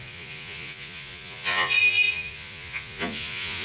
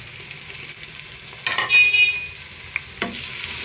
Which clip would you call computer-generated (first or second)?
first